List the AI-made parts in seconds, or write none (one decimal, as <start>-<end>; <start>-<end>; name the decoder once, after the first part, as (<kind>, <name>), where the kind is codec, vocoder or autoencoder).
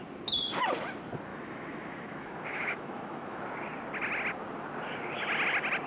1.3-3.4 (autoencoder, DAC-VAE)